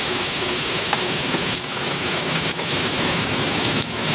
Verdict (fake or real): fake